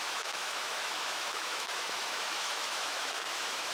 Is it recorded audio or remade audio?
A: remade